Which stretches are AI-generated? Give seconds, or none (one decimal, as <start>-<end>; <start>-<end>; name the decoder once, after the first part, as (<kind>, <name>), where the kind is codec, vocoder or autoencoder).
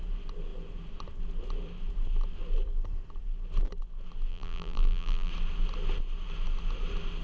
4.3-5.3 (vocoder, BigVGAN v2)